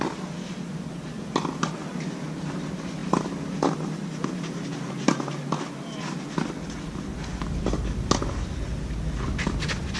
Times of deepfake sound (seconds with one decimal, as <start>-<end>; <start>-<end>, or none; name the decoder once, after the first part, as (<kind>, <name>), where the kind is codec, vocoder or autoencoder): none